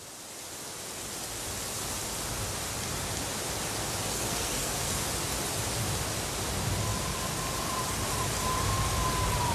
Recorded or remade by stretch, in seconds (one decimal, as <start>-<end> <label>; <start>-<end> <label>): 0.0-4.1 recorded; 4.1-5.0 remade; 5.0-9.5 recorded